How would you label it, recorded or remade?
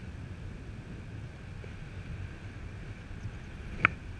recorded